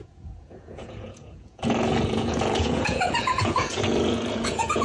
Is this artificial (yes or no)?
yes